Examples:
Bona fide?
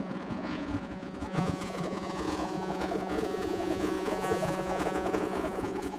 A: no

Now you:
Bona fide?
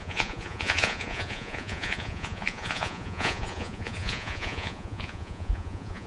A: no